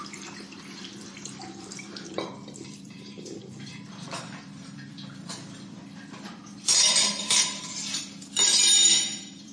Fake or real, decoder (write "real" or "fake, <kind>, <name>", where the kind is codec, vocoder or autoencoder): fake, vocoder, BigVGAN v2